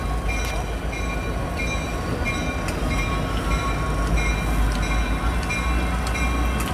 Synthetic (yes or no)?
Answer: no